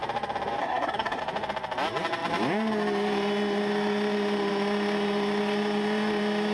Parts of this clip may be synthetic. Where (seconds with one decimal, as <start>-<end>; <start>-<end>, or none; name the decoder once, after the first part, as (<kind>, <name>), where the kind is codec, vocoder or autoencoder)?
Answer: 0.6-1.2 (codec, SNAC)